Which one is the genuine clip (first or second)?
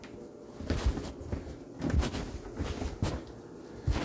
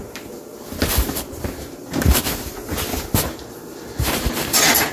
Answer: first